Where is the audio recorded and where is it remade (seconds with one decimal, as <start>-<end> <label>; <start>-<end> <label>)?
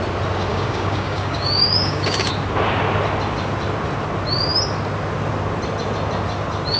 0.0-0.5 recorded; 0.5-2.3 remade; 2.3-6.8 recorded